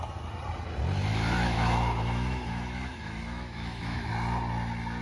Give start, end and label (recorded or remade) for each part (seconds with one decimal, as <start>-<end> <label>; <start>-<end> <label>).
0.0-1.1 recorded; 1.1-4.1 remade; 4.1-5.0 recorded

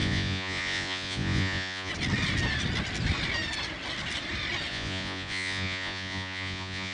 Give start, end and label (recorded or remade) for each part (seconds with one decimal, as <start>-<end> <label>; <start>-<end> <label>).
0.0-1.9 remade; 1.9-4.7 recorded; 4.7-6.9 remade

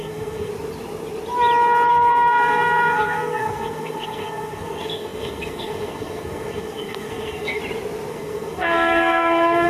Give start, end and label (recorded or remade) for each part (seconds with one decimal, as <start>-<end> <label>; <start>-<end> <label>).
0.0-0.5 remade; 0.5-1.9 recorded; 1.9-7.6 remade; 7.6-8.1 recorded; 8.1-9.7 remade

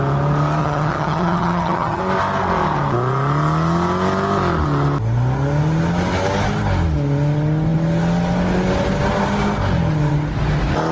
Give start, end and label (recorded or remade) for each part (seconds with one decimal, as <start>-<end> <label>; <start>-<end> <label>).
0.0-0.6 recorded; 0.6-2.0 remade; 2.0-10.9 recorded

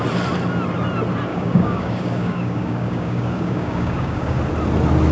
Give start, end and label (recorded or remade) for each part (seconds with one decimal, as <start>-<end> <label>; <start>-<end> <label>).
0.0-1.3 recorded; 1.3-4.4 remade; 4.4-5.1 recorded

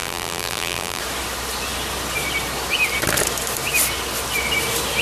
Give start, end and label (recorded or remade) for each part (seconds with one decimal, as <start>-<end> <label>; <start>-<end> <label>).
0.0-1.0 remade; 1.0-5.0 recorded

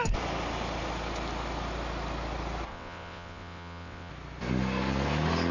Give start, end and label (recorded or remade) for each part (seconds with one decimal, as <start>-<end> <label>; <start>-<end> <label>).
0.0-2.7 recorded; 2.7-4.1 remade; 4.1-5.5 recorded

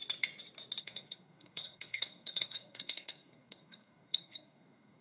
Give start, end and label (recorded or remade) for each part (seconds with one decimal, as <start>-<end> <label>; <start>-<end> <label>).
0.0-0.8 recorded; 0.8-5.0 remade